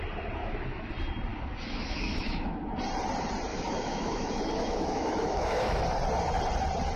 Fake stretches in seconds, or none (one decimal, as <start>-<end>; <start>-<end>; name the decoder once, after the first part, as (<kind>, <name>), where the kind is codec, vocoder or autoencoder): 0.4-0.9 (autoencoder, DAC-VAE); 1.3-2.7; 3.5-5.8